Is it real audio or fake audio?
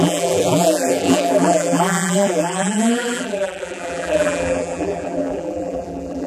fake